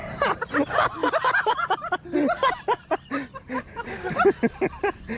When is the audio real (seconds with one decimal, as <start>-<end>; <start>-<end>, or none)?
0.5-5.2